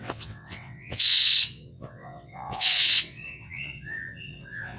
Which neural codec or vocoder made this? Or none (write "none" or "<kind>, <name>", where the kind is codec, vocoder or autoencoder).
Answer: vocoder, WaveNeXt